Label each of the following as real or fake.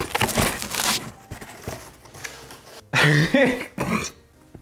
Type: real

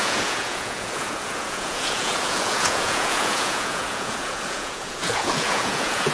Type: fake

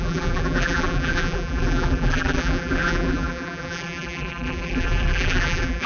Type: fake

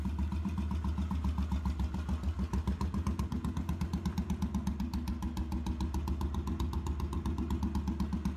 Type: real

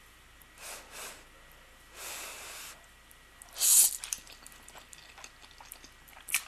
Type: real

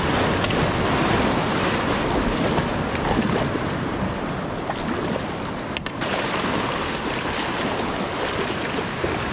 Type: real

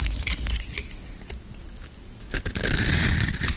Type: real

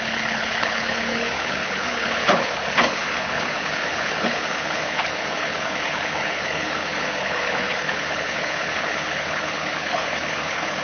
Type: fake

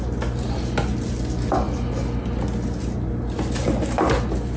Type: real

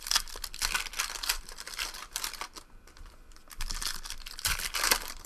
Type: fake